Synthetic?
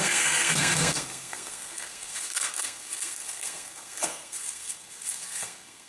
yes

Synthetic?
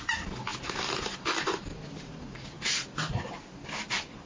no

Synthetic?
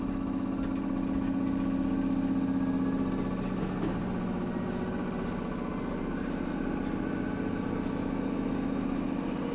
no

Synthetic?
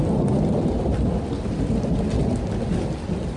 no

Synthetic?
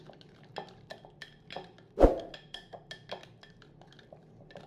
no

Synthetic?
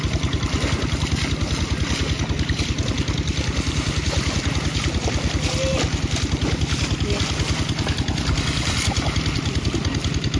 no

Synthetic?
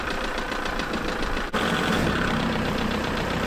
yes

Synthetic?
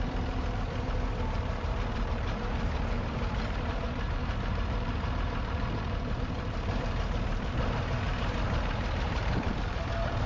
yes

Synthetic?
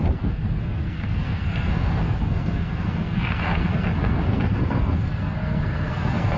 yes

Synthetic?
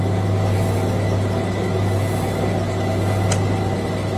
no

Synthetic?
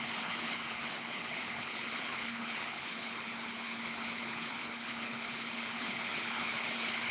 yes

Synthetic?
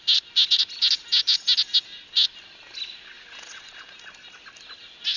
no